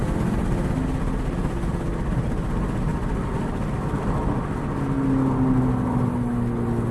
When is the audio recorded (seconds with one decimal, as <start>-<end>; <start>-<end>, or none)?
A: 0.0-6.9